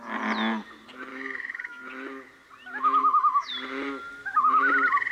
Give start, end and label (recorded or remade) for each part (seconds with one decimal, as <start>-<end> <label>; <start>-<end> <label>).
0.0-1.1 recorded; 1.1-1.8 remade; 1.8-3.0 recorded; 3.0-3.5 remade; 3.5-5.1 recorded